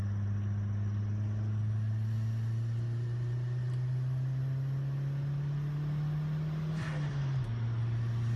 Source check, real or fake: real